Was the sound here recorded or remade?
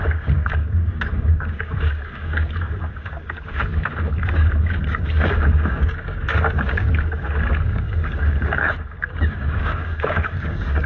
remade